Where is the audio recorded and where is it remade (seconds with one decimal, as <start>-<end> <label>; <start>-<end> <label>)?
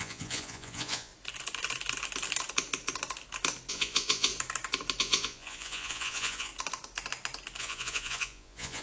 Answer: 0.0-1.1 remade; 1.1-3.7 recorded; 3.7-4.3 remade; 4.3-5.0 recorded; 5.0-6.5 remade; 6.5-7.6 recorded; 7.6-8.8 remade